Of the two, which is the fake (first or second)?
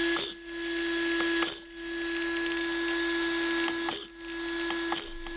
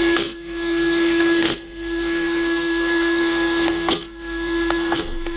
second